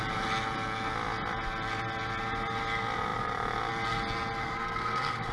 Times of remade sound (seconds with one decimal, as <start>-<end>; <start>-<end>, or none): 4.4-5.3